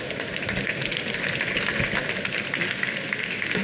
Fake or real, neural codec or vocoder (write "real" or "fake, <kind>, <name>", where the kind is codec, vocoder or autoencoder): real